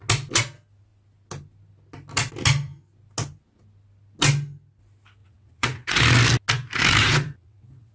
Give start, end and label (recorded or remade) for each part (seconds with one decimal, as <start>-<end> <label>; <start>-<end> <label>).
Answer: 0.0-5.2 recorded; 5.2-6.0 remade; 6.0-7.0 recorded; 7.0-7.9 remade